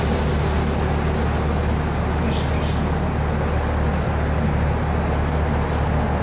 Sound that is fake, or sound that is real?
real